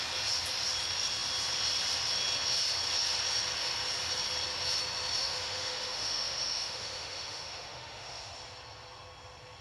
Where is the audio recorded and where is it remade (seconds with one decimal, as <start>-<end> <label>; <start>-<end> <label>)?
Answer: 0.0-5.2 recorded; 5.2-8.3 remade; 8.3-9.6 recorded